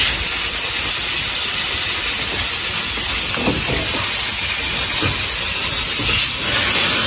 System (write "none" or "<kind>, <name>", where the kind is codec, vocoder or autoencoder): none